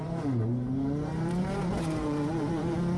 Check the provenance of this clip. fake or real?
fake